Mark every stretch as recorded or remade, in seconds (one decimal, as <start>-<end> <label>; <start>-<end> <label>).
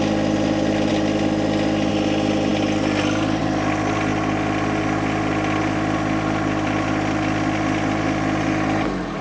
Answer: 0.0-9.2 recorded